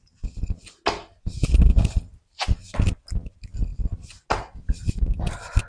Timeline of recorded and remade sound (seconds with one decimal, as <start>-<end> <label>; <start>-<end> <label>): 0.0-5.7 recorded